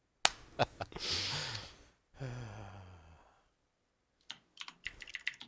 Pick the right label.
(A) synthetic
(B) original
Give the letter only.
B